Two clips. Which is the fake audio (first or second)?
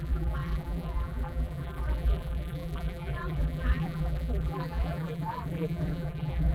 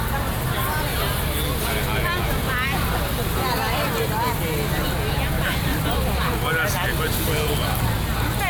first